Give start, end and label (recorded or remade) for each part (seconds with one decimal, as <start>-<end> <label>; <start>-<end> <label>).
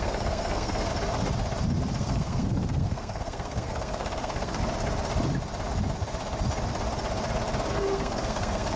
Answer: 0.0-0.9 remade; 0.9-2.0 recorded; 2.0-4.6 remade; 4.6-7.7 recorded; 7.7-8.8 remade